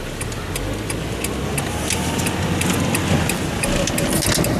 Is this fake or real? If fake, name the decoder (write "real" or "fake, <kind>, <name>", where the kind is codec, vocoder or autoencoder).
real